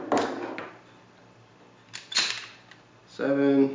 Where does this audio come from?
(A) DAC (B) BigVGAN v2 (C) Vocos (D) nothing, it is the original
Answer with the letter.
D